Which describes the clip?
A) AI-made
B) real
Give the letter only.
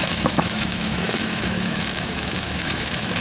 A